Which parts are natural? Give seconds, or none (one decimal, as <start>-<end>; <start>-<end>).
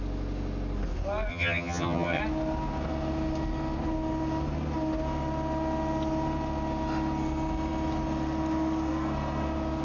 0.0-1.3; 2.2-9.8